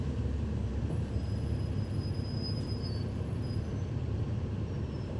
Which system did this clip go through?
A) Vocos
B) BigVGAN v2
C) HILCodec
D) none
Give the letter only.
B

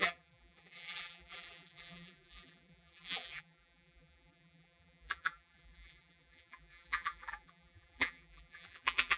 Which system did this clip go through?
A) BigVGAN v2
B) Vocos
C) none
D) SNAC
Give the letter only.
A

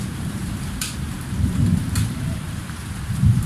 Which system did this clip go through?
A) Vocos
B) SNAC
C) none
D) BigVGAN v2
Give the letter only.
D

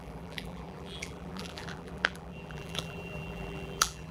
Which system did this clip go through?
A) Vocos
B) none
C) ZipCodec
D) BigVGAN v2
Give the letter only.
D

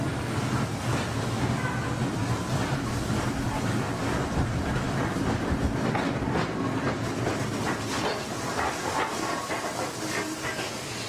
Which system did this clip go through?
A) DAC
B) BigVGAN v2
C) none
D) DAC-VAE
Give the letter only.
C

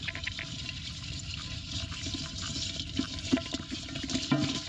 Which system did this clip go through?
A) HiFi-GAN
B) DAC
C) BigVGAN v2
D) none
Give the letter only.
D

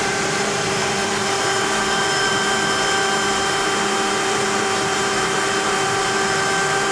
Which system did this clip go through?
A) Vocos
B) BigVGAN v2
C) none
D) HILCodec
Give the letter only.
B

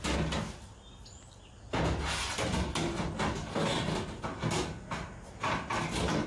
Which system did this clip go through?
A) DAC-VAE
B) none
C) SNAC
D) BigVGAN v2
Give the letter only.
B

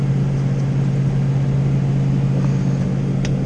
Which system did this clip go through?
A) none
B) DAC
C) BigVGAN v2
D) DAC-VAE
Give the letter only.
A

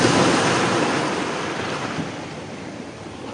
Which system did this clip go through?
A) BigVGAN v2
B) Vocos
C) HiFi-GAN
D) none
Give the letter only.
A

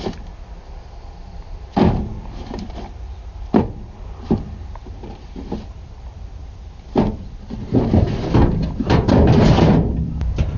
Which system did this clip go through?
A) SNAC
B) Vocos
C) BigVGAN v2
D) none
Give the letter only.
C